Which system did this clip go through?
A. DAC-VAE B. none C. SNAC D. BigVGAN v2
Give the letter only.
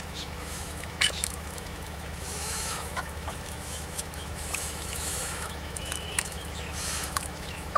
A